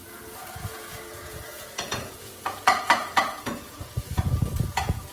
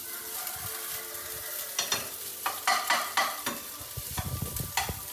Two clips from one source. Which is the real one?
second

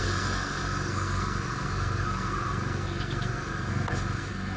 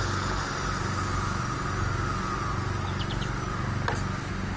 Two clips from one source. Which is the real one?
second